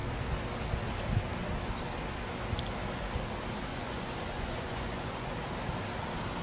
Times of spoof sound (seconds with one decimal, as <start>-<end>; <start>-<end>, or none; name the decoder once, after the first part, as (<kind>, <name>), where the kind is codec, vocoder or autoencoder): 3.7-5.3 (vocoder, Vocos)

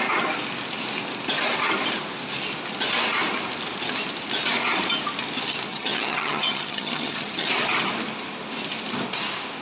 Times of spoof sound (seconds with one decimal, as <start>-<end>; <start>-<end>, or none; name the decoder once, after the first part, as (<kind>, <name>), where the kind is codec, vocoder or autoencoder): 5.7-7.5 (vocoder, HiFi-GAN)